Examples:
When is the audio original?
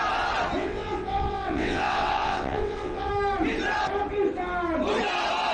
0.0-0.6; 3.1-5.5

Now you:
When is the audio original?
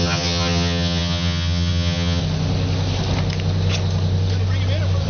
2.2-5.1